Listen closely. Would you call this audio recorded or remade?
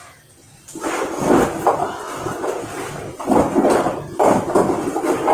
recorded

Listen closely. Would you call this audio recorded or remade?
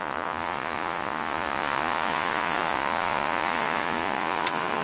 remade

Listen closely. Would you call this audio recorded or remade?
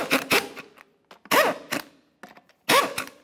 recorded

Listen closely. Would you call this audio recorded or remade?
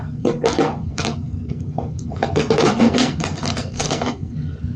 remade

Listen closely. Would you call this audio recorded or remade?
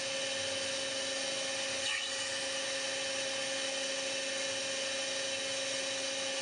recorded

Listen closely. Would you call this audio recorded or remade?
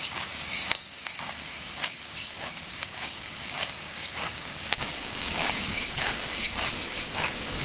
remade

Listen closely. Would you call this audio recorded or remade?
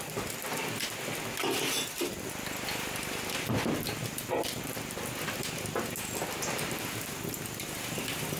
recorded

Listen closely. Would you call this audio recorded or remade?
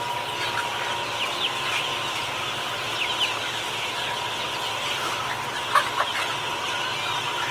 recorded